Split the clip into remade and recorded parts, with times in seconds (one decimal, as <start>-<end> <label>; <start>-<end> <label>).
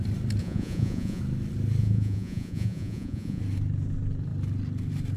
0.0-0.4 recorded; 0.4-1.2 remade; 1.2-1.8 recorded; 1.8-3.4 remade; 3.4-5.2 recorded